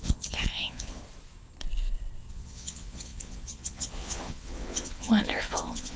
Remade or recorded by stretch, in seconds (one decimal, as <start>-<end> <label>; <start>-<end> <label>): 0.0-1.0 remade; 1.0-2.3 recorded; 2.3-6.0 remade